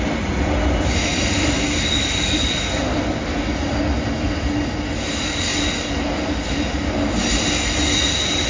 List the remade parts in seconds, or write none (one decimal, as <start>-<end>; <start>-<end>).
none